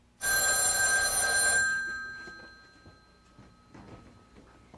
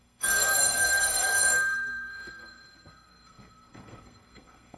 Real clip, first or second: first